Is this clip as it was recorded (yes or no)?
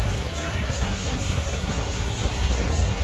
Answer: no